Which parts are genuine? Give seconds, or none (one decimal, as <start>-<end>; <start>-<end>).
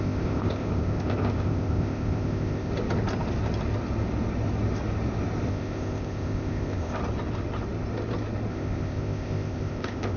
2.7-5.5; 7.0-8.5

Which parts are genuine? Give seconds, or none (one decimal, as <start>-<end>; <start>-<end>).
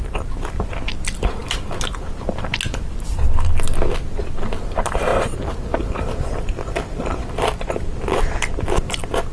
0.0-5.1; 8.3-9.3